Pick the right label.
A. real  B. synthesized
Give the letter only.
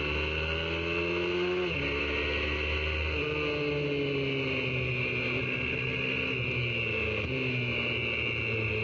A